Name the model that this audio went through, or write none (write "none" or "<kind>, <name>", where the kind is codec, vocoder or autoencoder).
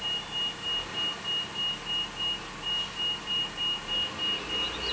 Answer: none